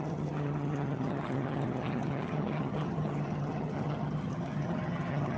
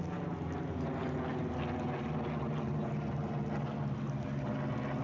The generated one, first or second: first